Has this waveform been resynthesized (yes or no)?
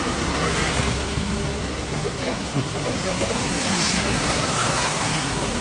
yes